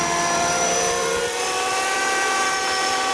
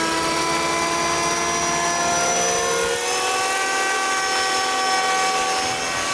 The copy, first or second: first